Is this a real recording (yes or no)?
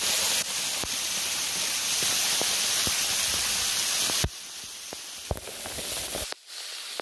yes